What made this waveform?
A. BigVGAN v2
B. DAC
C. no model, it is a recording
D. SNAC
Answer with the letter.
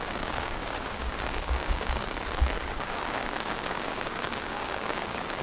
B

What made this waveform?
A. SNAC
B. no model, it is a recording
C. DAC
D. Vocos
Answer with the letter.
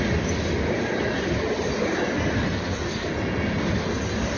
B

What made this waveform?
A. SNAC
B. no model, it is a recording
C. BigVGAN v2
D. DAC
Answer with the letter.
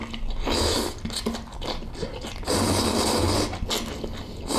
B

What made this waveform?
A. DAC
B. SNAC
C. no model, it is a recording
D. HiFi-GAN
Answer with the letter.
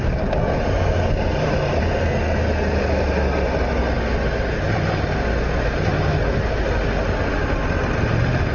C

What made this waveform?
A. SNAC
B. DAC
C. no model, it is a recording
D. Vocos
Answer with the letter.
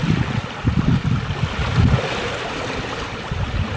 C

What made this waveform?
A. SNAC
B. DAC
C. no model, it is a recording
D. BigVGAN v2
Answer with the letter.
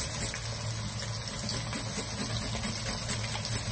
C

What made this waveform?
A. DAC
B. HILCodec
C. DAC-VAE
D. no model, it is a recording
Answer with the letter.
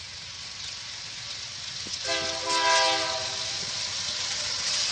D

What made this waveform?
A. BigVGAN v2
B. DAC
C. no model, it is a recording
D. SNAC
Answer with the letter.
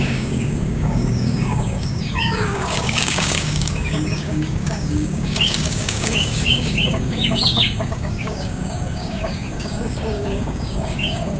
B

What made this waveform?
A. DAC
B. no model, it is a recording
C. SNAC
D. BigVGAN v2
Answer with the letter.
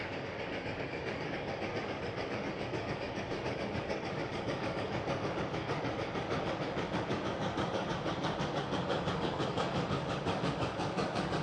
A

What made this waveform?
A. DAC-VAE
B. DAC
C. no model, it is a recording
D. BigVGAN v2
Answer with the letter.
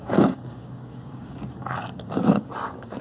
B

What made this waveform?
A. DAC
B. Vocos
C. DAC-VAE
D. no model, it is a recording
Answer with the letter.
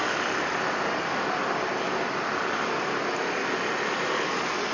D